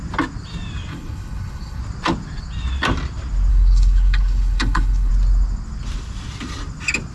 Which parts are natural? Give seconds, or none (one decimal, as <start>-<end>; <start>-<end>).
0.0-0.9; 1.8-3.5; 5.1-7.1